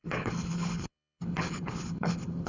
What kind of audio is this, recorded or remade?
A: remade